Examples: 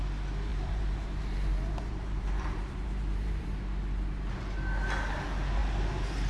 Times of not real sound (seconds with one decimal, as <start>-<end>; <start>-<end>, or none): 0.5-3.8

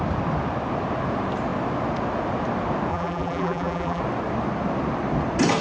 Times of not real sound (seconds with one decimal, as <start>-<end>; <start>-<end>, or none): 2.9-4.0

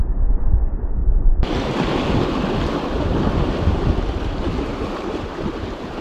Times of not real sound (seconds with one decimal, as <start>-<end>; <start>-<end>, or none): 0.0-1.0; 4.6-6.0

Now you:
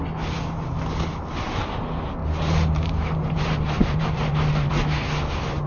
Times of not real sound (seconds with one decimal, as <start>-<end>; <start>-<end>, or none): 2.2-4.7

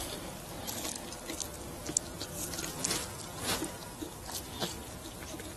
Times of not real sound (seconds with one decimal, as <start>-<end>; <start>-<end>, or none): 2.1-2.7

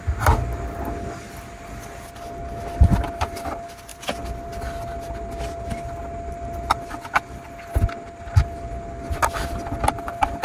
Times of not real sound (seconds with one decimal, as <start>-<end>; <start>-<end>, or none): none

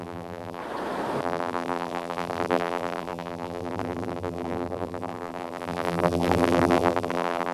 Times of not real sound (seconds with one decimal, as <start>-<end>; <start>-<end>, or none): 0.0-0.6; 1.2-7.5

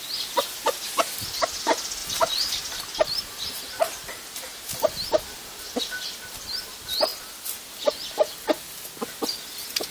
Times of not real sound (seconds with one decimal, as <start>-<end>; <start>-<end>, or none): 2.0-5.2